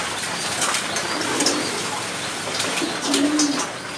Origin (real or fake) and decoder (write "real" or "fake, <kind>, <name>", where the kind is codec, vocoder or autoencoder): real